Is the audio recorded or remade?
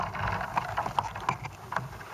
recorded